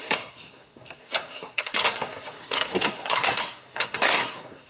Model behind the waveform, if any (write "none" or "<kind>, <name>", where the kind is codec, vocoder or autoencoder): codec, SNAC